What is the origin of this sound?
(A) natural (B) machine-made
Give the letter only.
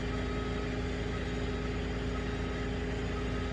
A